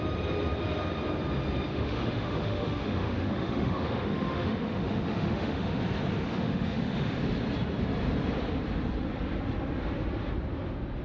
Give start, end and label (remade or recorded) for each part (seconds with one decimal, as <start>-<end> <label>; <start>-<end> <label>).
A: 0.0-1.7 recorded; 1.7-5.8 remade; 5.8-6.2 recorded; 6.2-7.2 remade; 7.2-11.0 recorded

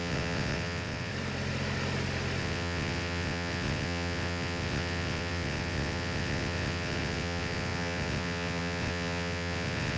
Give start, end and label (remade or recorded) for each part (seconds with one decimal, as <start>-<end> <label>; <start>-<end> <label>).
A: 0.0-1.1 remade; 1.1-2.4 recorded; 2.4-10.0 remade

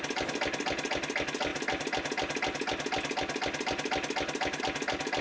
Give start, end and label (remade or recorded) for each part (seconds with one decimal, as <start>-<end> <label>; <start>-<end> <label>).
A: 0.0-5.2 recorded

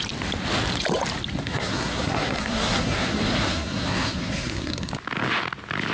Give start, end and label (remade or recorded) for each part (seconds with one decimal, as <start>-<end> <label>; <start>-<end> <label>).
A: 0.0-1.4 recorded; 1.4-4.9 remade; 4.9-5.9 recorded

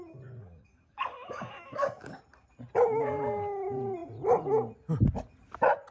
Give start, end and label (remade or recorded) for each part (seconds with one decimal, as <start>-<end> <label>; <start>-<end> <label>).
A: 0.0-0.4 recorded; 0.4-2.2 remade; 2.2-5.9 recorded

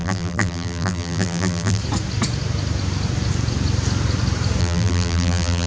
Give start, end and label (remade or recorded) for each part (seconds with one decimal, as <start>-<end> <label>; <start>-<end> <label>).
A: 0.0-1.8 remade; 1.8-4.6 recorded; 4.6-5.7 remade

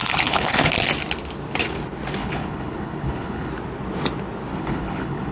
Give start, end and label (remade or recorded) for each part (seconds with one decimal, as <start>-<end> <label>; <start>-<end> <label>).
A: 0.0-0.7 remade; 0.7-2.2 recorded; 2.2-3.5 remade; 3.5-4.5 recorded; 4.5-5.3 remade